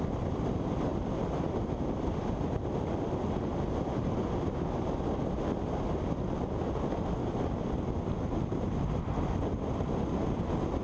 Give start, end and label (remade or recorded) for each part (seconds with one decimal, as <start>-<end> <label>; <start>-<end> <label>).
0.0-10.8 recorded